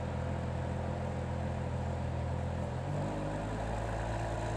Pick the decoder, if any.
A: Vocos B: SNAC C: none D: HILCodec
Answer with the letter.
C